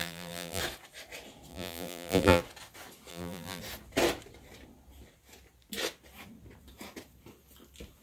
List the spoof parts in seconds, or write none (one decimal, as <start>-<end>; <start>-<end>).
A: 0.0-0.6; 1.5-2.4; 3.1-3.6